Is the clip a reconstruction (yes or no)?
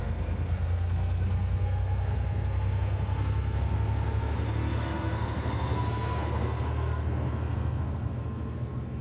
yes